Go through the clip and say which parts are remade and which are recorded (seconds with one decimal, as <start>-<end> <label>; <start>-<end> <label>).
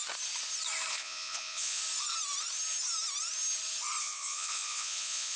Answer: 0.0-0.9 recorded; 0.9-1.8 remade; 1.8-4.0 recorded; 4.0-5.4 remade